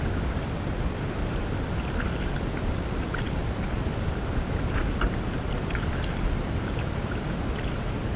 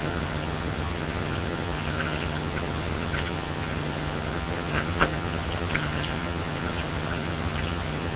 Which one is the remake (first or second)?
second